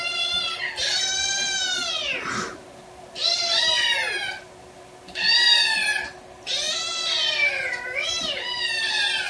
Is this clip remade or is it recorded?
recorded